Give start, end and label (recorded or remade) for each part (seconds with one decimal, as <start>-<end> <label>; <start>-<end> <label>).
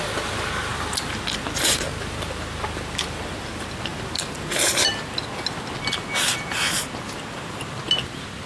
0.0-0.7 recorded; 0.7-1.2 remade; 1.2-1.9 recorded; 1.9-5.0 remade; 5.0-8.5 recorded